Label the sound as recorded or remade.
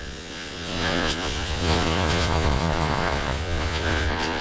remade